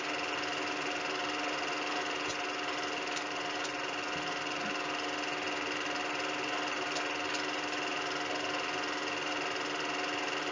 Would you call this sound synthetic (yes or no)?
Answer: no